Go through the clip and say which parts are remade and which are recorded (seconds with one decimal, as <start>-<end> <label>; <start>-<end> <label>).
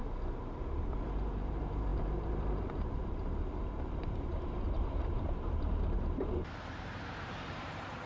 0.0-0.8 recorded; 0.8-8.1 remade